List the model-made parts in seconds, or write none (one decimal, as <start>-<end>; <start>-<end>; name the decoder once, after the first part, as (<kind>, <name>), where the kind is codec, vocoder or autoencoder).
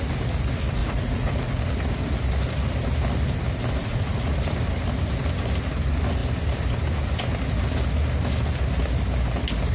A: 0.8-1.6 (vocoder, Vocos); 3.8-4.3